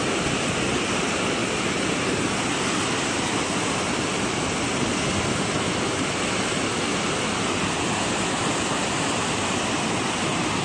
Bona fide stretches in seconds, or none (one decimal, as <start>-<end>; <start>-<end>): 0.0-10.6